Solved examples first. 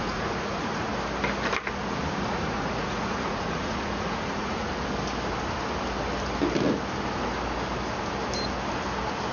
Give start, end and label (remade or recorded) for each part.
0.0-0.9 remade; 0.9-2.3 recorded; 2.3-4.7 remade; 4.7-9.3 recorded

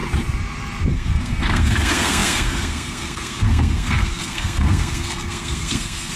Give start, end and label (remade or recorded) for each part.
0.0-0.9 recorded; 0.9-6.2 remade

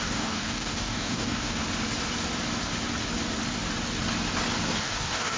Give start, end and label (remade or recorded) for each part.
0.0-1.6 remade; 1.6-4.8 recorded; 4.8-5.4 remade

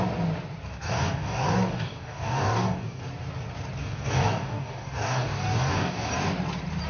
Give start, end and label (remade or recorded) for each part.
0.0-0.7 recorded; 0.7-3.0 remade; 3.0-3.8 recorded; 3.8-6.1 remade; 6.1-6.9 recorded